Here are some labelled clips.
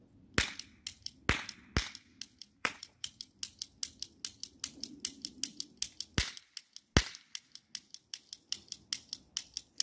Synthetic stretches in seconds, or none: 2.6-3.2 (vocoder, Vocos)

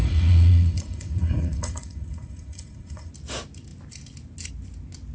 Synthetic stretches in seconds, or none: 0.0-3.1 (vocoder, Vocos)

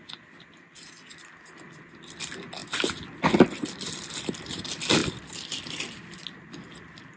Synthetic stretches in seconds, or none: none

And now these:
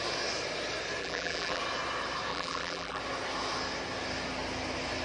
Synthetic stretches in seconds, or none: 1.0-1.6 (vocoder, BigVGAN v2); 2.3-3.0